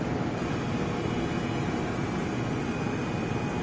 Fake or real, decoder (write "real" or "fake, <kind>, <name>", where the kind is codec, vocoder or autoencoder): real